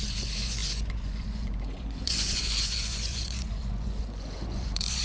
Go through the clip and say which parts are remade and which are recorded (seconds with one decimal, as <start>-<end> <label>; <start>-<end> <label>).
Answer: 0.0-5.0 remade